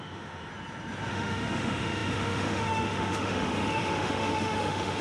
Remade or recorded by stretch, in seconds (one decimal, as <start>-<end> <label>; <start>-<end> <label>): 0.0-0.5 remade; 0.5-1.1 recorded; 1.1-5.0 remade